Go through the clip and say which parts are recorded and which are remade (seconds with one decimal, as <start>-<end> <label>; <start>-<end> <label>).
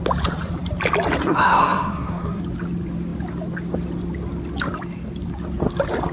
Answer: 0.0-1.2 recorded; 1.2-2.4 remade; 2.4-6.1 recorded